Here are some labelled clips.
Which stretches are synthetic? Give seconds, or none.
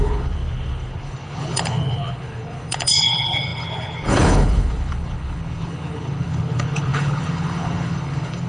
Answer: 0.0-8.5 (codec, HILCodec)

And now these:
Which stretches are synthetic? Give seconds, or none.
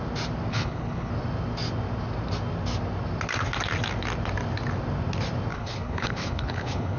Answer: 0.5-1.1 (codec, HILCodec); 5.5-7.0